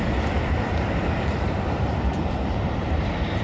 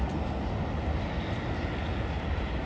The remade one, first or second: first